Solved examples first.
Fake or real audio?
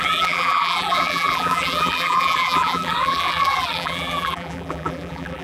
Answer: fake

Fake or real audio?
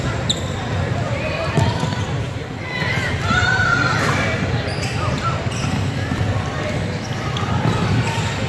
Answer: fake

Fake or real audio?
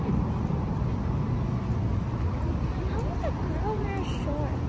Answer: real